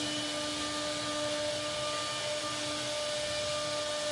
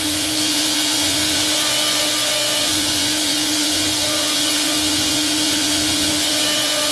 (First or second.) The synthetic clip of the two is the second